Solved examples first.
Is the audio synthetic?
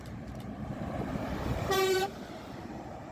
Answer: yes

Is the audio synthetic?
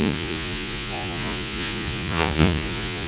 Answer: yes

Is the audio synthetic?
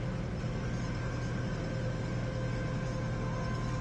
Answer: no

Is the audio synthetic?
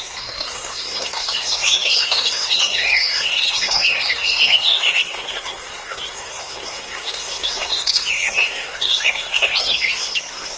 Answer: yes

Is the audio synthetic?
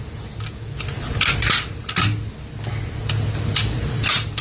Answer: yes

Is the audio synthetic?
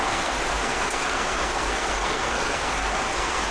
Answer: yes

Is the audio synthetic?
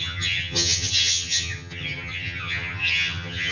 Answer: yes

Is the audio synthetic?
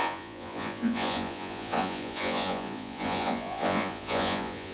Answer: yes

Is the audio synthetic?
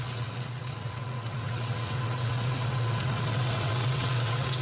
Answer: yes